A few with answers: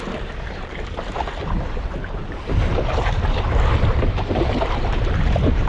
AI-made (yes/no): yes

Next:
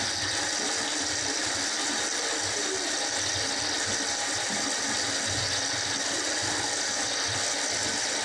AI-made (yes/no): no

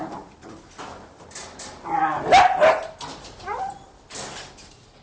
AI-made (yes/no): no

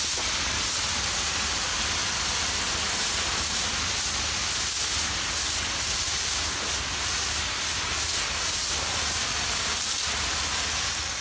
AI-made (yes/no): no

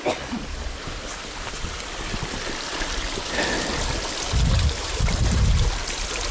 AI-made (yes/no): no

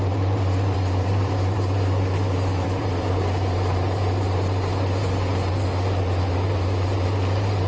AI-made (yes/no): yes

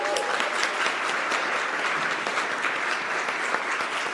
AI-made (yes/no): no